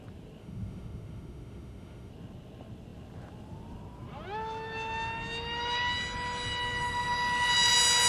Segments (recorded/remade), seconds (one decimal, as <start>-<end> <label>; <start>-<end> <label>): 0.0-0.4 recorded; 0.4-2.1 remade; 2.1-8.1 recorded